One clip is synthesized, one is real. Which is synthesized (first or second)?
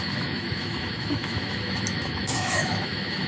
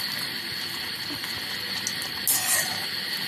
first